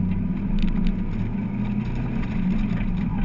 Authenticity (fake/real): real